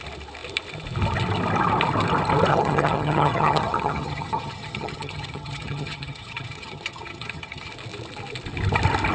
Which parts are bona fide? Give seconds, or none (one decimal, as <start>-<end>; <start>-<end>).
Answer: 0.0-2.5; 7.7-9.1